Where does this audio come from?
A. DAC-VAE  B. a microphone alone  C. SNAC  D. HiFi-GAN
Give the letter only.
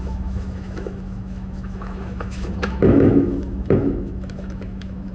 A